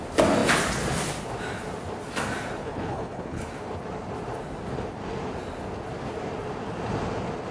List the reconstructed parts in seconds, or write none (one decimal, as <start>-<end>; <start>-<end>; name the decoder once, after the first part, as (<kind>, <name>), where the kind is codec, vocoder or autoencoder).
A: 2.6-3.5 (codec, HILCodec)